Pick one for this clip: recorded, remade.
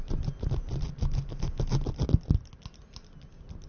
recorded